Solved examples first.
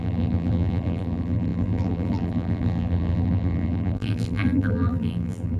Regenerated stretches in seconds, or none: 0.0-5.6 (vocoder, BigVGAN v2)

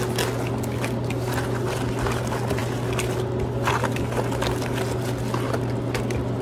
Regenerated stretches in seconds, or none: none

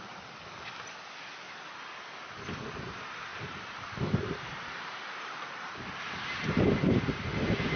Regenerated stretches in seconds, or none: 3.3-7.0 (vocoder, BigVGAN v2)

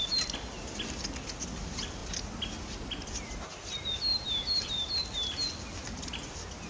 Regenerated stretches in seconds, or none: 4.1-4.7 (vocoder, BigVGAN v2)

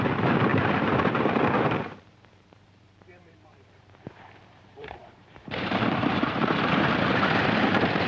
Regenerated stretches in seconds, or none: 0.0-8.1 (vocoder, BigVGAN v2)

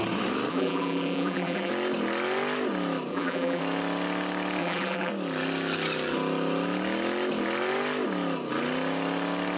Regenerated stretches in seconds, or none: 0.5-1.7 (vocoder, BigVGAN v2); 3.1-3.6; 4.6-5.1